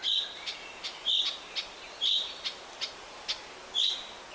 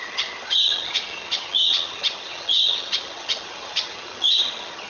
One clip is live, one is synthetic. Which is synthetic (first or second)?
second